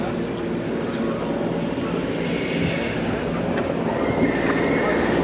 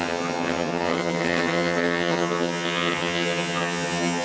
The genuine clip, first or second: first